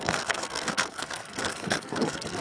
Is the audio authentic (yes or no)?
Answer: no